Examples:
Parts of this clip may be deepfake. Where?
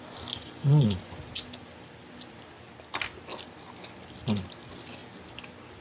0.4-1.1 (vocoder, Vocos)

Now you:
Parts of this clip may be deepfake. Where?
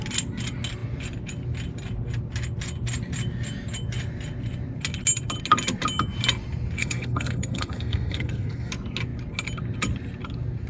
6.8-8.7 (codec, SNAC)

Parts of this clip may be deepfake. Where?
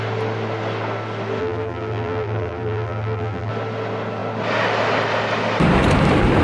1.4-3.5 (vocoder, BigVGAN v2)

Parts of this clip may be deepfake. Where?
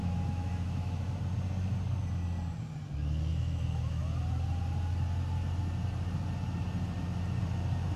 0.0-1.2 (autoencoder, DAC-VAE); 3.3-4.0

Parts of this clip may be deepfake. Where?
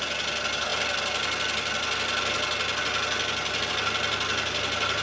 none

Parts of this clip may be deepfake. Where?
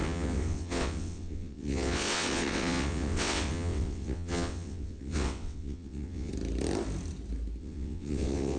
0.0-6.3 (vocoder, WaveNeXt); 7.6-8.6